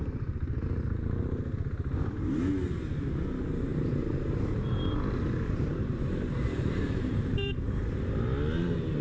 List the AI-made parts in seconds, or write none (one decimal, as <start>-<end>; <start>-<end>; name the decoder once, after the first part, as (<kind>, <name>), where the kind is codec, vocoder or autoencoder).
3.7-7.8 (vocoder, BigVGAN v2)

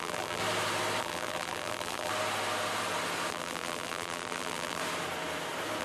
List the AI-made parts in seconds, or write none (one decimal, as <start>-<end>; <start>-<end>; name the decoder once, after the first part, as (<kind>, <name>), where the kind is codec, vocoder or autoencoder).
0.0-0.4 (vocoder, BigVGAN v2); 1.0-2.1; 3.3-4.8

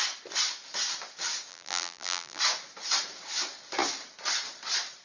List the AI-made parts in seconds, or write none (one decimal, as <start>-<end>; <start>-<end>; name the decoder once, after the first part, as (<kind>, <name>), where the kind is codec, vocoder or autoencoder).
1.5-2.4 (vocoder, BigVGAN v2)